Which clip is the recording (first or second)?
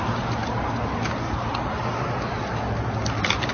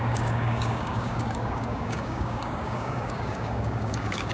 first